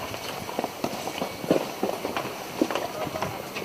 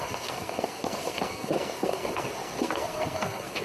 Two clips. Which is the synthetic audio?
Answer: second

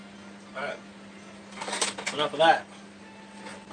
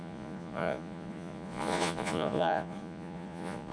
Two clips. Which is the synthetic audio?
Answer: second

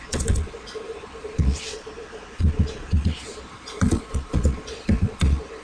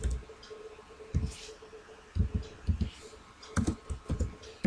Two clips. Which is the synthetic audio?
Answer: first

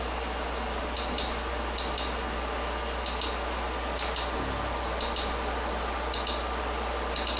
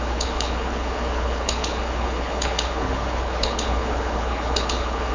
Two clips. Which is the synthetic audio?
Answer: second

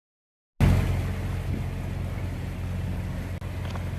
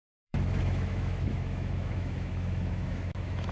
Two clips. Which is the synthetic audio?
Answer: second